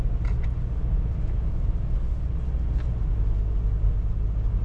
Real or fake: real